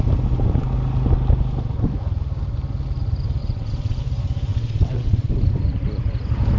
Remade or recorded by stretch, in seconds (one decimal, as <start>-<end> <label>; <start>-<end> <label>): 0.0-3.4 recorded; 3.4-4.0 remade; 4.0-4.5 recorded; 4.5-5.3 remade; 5.3-6.6 recorded